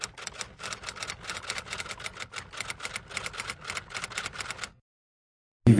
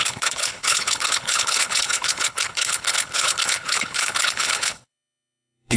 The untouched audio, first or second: first